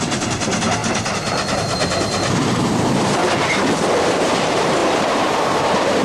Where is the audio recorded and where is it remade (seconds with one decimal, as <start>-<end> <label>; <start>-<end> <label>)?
0.0-3.2 remade; 3.2-4.0 recorded; 4.0-6.0 remade